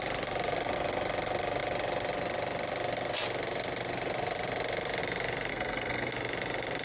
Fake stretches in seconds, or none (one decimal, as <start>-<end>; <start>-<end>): 5.5-6.1